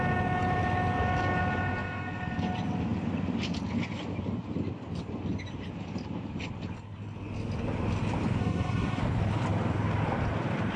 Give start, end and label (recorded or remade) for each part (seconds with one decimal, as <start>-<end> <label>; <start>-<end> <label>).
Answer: 0.0-8.4 recorded; 8.4-9.0 remade; 9.0-10.8 recorded